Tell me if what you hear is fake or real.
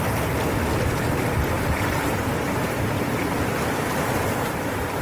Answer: real